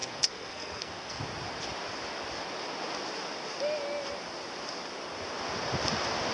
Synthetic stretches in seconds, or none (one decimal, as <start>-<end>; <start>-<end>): 0.0-1.2